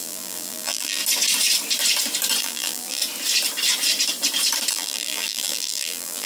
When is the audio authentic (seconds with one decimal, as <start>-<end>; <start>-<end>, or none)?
1.0-2.4; 3.0-4.7